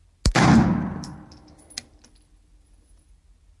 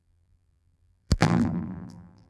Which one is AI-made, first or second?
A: second